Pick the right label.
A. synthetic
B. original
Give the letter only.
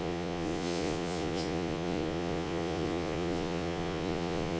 A